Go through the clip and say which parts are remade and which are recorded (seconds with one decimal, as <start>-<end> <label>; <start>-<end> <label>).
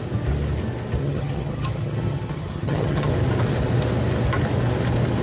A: 0.0-1.0 recorded; 1.0-3.1 remade; 3.1-5.2 recorded